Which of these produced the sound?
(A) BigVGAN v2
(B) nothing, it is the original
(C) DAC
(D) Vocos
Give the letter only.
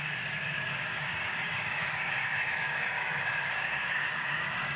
C